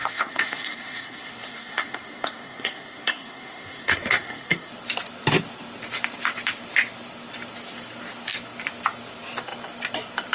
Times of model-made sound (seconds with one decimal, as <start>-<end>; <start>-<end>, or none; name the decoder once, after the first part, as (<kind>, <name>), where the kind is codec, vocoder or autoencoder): 0.0-4.7 (codec, SNAC)